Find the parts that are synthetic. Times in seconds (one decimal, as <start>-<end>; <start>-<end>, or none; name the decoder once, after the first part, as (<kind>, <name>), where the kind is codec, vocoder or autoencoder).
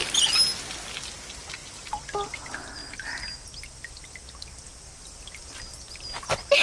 none